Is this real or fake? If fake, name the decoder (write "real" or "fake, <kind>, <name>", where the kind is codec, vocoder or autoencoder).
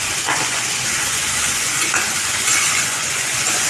fake, vocoder, Vocos